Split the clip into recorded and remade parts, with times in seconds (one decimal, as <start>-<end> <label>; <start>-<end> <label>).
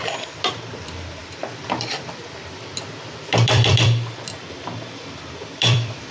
0.0-6.1 remade